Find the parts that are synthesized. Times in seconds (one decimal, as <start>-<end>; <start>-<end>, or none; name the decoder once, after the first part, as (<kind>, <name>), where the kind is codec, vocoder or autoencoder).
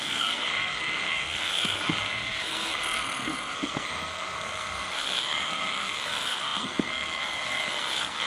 0.0-8.3 (codec, SNAC)